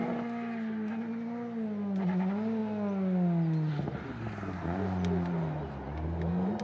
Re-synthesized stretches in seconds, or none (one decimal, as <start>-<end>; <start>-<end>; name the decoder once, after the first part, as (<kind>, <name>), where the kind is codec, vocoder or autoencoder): none